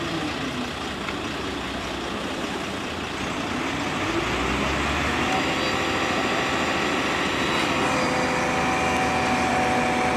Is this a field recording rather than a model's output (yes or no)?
yes